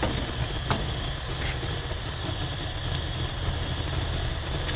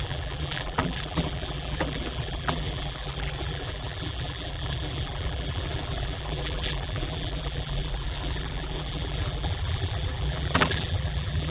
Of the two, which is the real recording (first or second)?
first